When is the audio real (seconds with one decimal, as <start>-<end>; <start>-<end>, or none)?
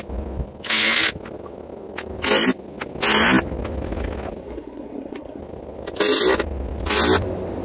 0.0-4.4; 5.4-7.6